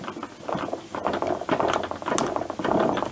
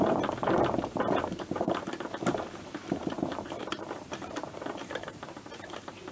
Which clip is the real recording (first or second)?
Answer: first